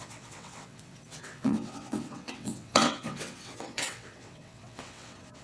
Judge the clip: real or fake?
fake